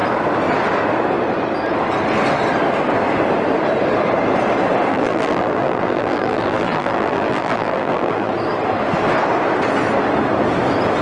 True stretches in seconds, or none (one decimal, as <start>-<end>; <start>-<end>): 0.0-4.9; 8.3-11.0